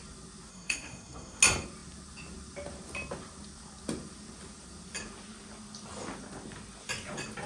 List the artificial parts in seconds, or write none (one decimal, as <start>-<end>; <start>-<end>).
0.5-1.4